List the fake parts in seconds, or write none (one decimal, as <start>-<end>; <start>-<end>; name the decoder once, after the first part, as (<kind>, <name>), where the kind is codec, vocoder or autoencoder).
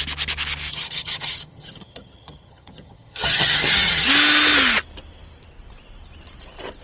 0.7-4.1 (vocoder, HiFi-GAN)